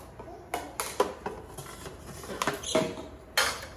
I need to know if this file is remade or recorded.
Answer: recorded